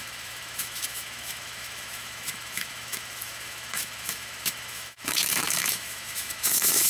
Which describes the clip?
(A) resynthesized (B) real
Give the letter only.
A